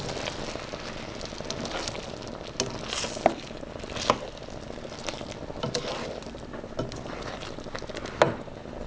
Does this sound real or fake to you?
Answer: real